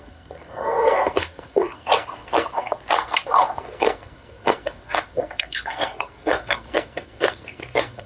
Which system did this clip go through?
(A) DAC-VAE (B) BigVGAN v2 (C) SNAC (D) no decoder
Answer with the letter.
C